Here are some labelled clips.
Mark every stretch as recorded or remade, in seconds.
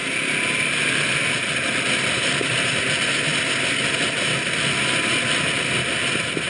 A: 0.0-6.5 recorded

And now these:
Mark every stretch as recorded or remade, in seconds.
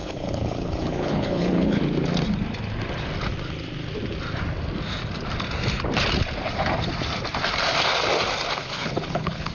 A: 0.0-1.8 remade; 1.8-8.6 recorded; 8.6-9.5 remade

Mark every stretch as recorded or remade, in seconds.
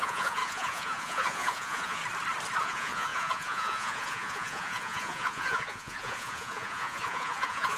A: 0.0-2.0 remade; 2.0-2.6 recorded; 2.6-7.8 remade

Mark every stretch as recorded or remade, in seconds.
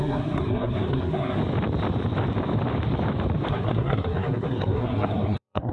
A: 0.0-1.4 remade; 1.4-3.5 recorded; 3.5-5.7 remade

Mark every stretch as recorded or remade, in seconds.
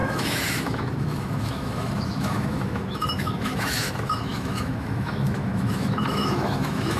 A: 0.0-7.0 remade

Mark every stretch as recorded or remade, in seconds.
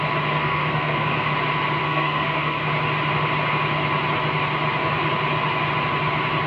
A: 0.0-0.4 recorded; 0.4-1.3 remade; 1.3-1.8 recorded; 1.8-2.6 remade; 2.6-6.5 recorded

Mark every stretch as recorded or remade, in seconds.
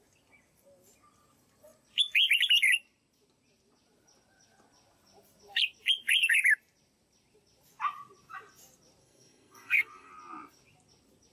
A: 0.0-9.0 recorded; 9.0-10.1 remade; 10.1-11.3 recorded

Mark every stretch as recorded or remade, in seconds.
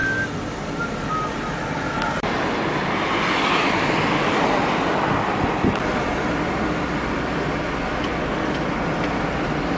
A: 0.0-9.8 recorded